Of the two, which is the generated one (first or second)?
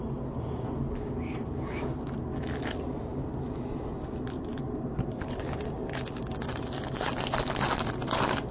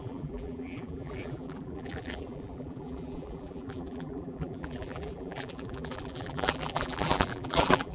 second